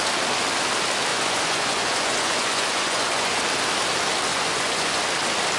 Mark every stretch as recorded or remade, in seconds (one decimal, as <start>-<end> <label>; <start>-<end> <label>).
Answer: 0.0-1.1 recorded; 1.1-3.4 remade; 3.4-4.3 recorded; 4.3-5.0 remade; 5.0-5.6 recorded